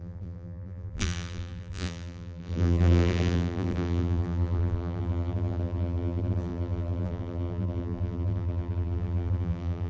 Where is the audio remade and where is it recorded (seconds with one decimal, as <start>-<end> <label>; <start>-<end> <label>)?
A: 0.0-9.9 remade